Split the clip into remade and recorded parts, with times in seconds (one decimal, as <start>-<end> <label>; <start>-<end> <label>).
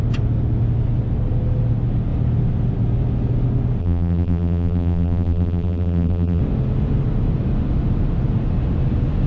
0.0-3.8 recorded; 3.8-6.4 remade; 6.4-9.3 recorded